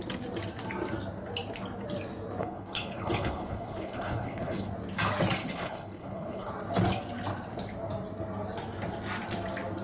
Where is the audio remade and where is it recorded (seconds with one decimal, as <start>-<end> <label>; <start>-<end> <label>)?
0.0-2.4 recorded; 2.4-4.7 remade; 4.7-5.4 recorded; 5.4-6.5 remade; 6.5-9.8 recorded